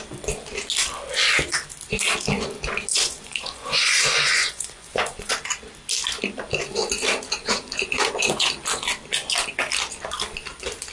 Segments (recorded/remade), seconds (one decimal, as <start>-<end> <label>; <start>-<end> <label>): 0.0-2.9 recorded; 2.9-5.3 remade; 5.3-7.4 recorded; 7.4-8.5 remade; 8.5-10.9 recorded